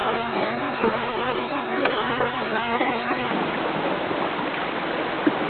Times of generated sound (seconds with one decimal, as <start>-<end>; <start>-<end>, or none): 0.0-3.3